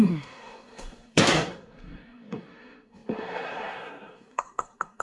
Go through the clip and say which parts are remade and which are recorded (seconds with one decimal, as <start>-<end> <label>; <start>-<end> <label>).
0.0-5.0 remade